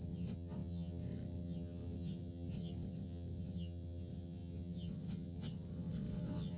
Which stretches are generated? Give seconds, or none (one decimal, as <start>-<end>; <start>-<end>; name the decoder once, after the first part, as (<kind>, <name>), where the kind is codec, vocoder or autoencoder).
0.0-6.6 (vocoder, WaveNeXt)